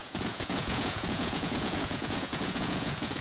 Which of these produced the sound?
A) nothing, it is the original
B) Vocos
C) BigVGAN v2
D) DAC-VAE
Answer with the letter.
B